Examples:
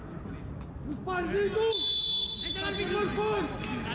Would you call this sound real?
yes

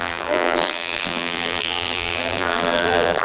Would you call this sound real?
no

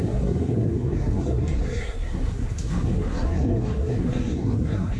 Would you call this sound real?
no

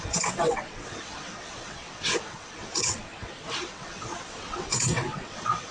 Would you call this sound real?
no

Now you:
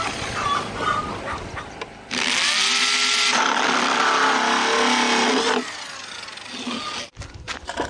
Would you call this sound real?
yes